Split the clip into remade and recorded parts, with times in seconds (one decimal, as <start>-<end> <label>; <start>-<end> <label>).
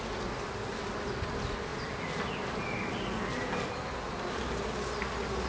0.0-1.7 recorded; 1.7-5.0 remade; 5.0-5.5 recorded